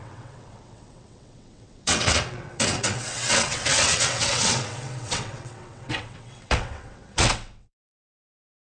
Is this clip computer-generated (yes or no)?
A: yes